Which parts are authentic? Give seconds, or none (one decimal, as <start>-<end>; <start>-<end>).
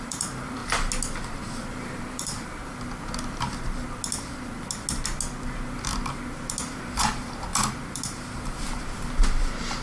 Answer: 0.6-1.3; 2.6-6.6; 7.5-8.8